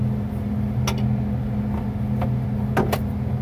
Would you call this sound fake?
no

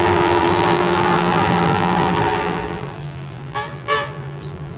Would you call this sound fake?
yes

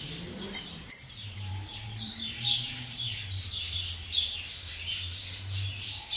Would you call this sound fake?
yes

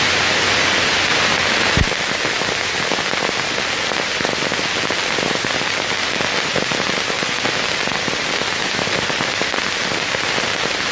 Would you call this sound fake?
no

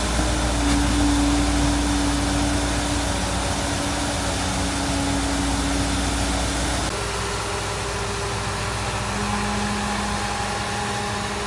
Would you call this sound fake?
no